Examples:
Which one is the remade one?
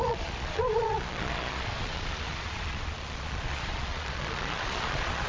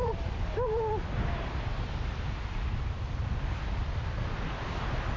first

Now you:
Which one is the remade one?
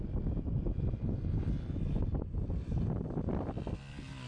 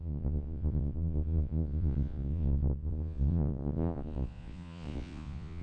second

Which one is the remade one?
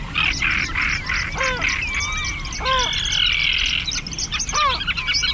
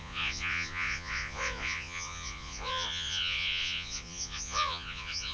second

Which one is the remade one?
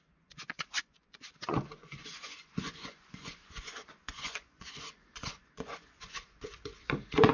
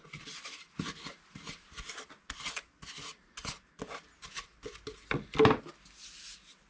first